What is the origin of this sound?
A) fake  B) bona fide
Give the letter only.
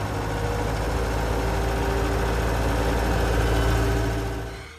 B